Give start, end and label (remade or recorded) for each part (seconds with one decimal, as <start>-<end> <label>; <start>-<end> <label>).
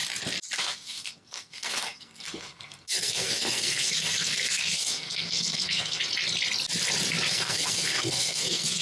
0.0-0.6 recorded; 0.6-6.0 remade; 6.0-7.3 recorded; 7.3-8.8 remade